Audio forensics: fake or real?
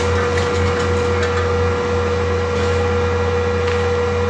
real